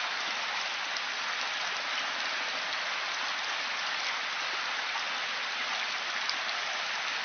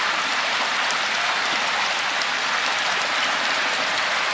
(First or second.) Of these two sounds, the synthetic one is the second